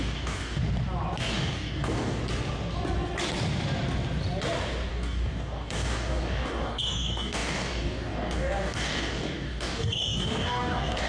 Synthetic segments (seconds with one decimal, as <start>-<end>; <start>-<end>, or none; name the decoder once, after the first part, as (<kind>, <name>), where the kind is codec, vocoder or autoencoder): 0.0-0.6 (codec, DAC); 1.2-2.2; 4.9-11.1